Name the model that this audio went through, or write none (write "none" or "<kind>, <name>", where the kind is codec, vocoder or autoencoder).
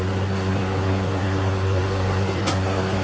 codec, SNAC